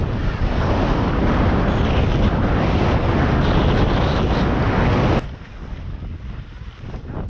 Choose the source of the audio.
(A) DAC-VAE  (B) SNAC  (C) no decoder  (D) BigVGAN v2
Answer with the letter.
C